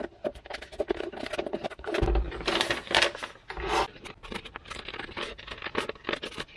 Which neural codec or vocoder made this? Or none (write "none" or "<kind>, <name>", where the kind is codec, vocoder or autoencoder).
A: none